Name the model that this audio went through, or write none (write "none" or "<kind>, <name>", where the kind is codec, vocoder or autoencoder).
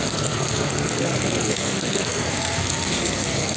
codec, SNAC